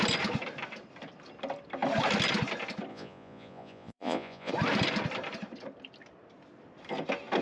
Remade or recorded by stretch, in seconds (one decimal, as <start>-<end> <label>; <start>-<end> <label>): 0.0-2.9 recorded; 2.9-4.5 remade; 4.5-7.4 recorded